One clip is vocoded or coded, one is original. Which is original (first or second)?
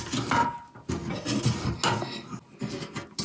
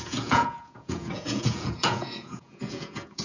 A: first